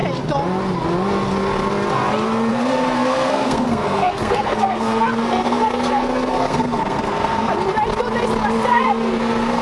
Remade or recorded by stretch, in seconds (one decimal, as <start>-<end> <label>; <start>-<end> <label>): 0.0-2.5 recorded; 2.5-7.5 remade; 7.5-8.7 recorded; 8.7-9.6 remade